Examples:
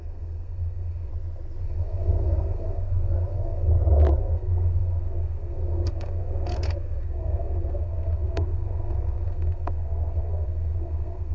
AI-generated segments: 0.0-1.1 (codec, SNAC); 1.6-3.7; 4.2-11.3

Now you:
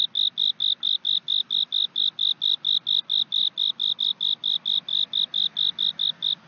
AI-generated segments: none